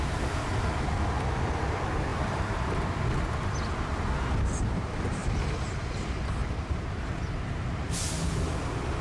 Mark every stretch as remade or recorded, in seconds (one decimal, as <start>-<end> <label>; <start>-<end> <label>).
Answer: 0.0-2.1 recorded; 2.1-2.7 remade; 2.7-5.2 recorded; 5.2-5.9 remade; 5.9-6.4 recorded; 6.4-8.0 remade; 8.0-9.0 recorded